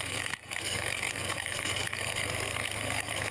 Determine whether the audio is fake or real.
fake